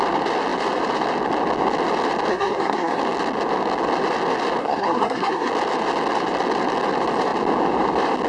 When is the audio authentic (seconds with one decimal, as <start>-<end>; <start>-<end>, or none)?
0.0-2.3; 3.0-4.6; 5.5-8.3